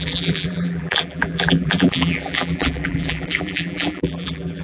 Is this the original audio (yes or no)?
no